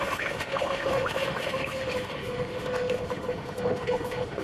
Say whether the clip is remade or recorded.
remade